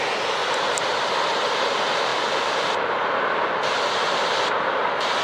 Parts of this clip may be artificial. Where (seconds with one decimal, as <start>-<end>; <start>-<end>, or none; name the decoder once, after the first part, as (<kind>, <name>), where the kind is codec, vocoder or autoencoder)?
2.1-3.9 (vocoder, BigVGAN v2)